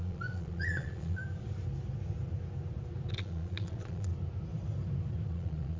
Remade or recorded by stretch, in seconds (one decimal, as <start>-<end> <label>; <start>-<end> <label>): 0.0-1.2 remade; 1.2-3.1 recorded; 3.1-4.1 remade; 4.1-5.3 recorded; 5.3-5.8 remade